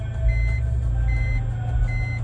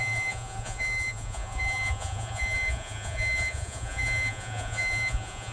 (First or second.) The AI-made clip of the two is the second